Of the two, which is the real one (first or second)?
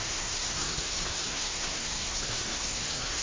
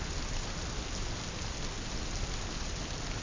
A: second